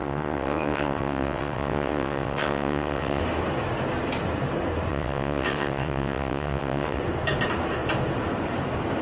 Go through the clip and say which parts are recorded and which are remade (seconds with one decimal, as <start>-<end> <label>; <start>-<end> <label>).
0.0-3.2 remade; 3.2-4.9 recorded; 4.9-7.0 remade; 7.0-9.0 recorded